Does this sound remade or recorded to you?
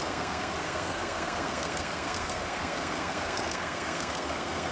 remade